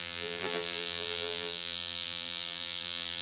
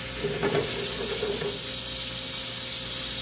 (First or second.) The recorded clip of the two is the second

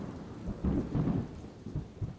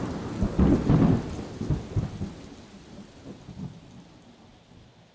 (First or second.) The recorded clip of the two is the second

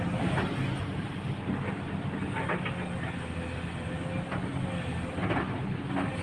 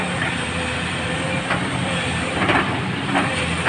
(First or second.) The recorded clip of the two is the first